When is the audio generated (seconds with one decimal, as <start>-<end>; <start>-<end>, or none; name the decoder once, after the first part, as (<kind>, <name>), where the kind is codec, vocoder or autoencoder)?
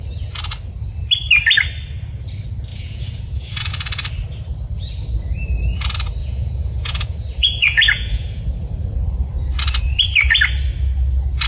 2.7-3.7 (vocoder, Vocos); 6.2-8.4